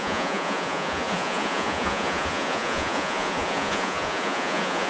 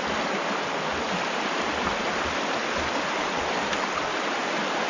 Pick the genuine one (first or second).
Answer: second